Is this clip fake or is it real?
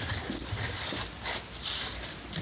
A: real